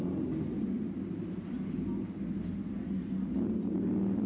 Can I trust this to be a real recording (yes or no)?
yes